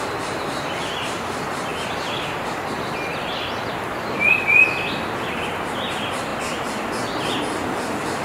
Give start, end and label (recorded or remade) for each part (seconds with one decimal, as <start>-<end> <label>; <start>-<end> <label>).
0.0-1.7 remade; 1.7-3.9 recorded; 3.9-6.3 remade; 6.3-8.2 recorded